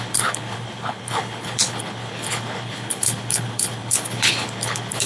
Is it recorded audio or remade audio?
remade